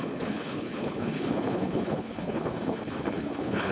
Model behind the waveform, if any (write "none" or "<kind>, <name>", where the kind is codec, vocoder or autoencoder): codec, HILCodec